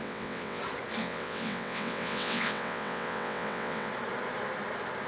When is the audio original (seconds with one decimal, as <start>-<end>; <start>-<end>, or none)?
0.6-1.0; 3.9-5.1